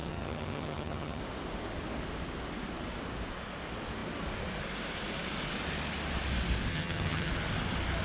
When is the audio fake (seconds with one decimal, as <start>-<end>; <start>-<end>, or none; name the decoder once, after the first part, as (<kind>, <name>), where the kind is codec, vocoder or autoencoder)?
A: 0.0-1.2 (vocoder, HiFi-GAN); 6.7-7.3